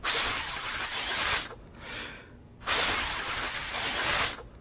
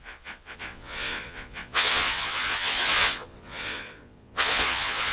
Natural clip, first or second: first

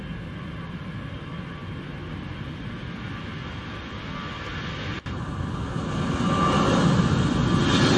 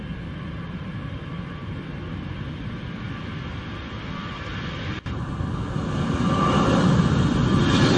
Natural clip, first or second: first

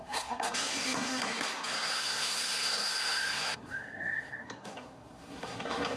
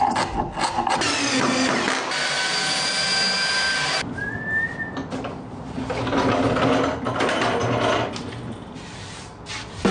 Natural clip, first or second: second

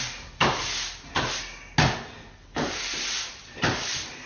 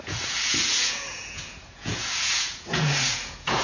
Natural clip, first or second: first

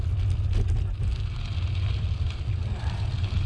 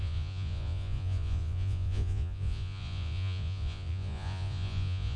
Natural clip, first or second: first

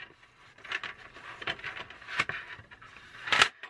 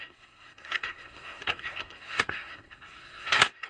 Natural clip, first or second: first